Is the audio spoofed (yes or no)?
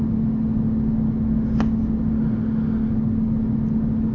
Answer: no